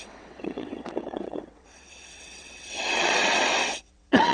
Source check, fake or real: fake